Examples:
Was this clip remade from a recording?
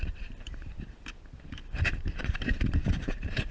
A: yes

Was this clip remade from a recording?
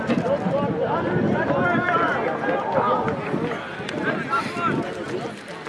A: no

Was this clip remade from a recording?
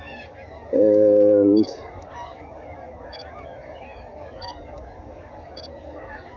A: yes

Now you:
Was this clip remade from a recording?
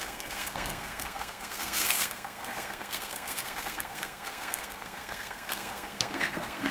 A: yes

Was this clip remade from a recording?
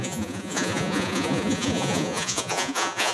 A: yes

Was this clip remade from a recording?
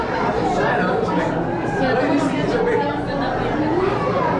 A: no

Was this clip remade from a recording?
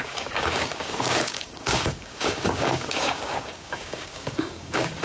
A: yes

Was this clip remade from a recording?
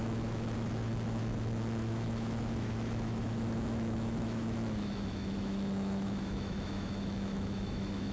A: yes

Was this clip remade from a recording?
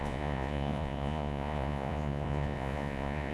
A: yes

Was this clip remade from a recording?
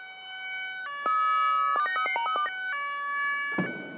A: no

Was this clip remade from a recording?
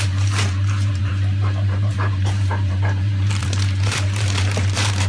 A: yes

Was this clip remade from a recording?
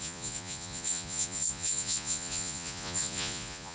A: yes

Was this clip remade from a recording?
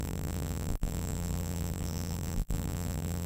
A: yes